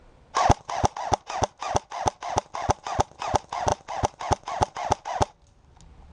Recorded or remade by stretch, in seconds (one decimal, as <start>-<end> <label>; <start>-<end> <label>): 0.0-6.1 recorded